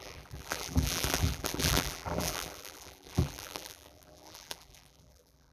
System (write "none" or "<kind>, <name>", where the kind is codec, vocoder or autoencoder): vocoder, BigVGAN v2